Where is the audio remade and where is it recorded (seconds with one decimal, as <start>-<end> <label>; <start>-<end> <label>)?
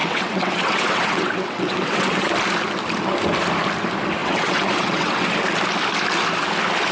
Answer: 0.0-2.3 remade; 2.3-4.2 recorded; 4.2-5.3 remade; 5.3-6.9 recorded